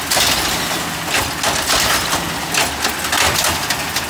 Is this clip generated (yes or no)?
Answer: no